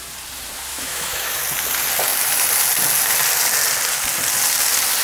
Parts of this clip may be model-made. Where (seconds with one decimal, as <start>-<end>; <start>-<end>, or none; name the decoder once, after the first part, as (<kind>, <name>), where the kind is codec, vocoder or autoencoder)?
0.7-1.4 (autoencoder, DAC-VAE)